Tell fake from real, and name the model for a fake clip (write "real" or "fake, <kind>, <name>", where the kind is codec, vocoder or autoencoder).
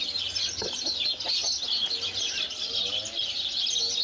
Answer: real